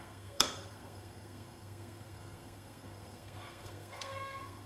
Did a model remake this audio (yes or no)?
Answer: yes